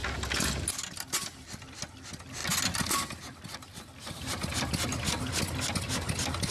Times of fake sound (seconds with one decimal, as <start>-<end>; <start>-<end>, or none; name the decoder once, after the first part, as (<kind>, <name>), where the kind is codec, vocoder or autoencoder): none